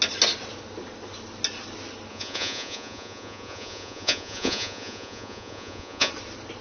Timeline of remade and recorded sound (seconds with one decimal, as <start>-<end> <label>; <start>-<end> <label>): 0.0-2.1 recorded; 2.1-6.1 remade; 6.1-6.6 recorded